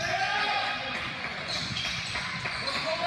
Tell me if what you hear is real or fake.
fake